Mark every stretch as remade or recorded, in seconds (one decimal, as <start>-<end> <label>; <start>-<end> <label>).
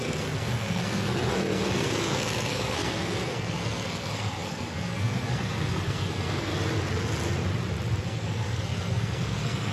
0.0-6.5 remade; 6.5-8.0 recorded; 8.0-9.7 remade